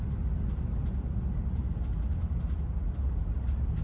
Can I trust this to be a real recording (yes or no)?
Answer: yes